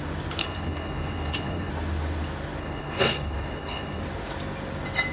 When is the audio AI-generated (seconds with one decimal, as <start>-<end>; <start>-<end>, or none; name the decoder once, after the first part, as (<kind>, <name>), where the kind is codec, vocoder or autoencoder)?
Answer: 0.4-1.7 (codec, HILCodec); 2.6-4.0